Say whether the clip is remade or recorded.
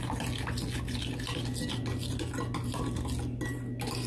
recorded